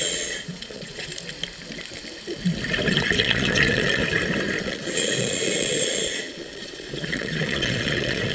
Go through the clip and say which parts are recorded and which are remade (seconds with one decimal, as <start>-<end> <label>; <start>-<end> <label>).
0.0-1.1 remade; 1.1-2.9 recorded; 2.9-4.0 remade; 4.0-4.6 recorded; 4.6-8.3 remade